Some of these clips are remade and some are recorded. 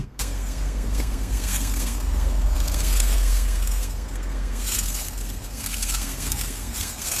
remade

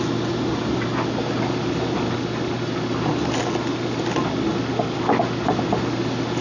recorded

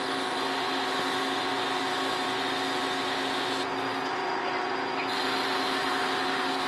recorded